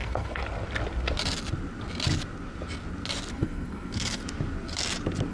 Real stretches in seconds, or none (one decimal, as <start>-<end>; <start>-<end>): 0.4-3.3; 4.2-5.3